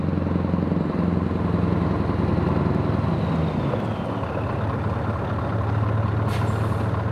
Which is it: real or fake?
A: real